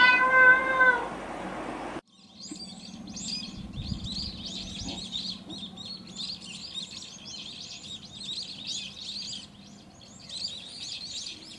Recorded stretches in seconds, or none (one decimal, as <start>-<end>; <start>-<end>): 0.0-11.6